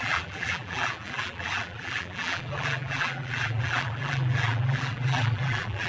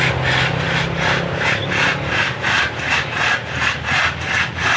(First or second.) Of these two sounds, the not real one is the first